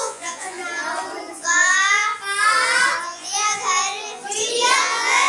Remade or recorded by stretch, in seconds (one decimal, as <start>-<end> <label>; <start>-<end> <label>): 0.0-0.6 remade; 0.6-1.3 recorded; 1.3-2.1 remade; 2.1-3.0 recorded; 3.0-4.2 remade; 4.2-4.8 recorded; 4.8-5.3 remade